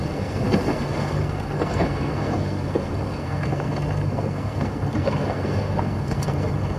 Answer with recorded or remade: remade